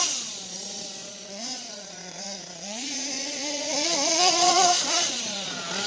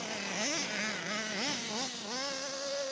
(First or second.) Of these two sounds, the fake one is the first